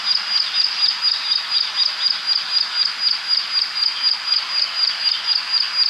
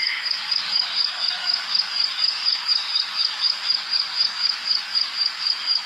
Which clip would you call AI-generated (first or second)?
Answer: second